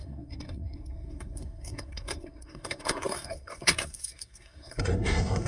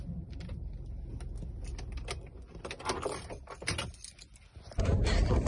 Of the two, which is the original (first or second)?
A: second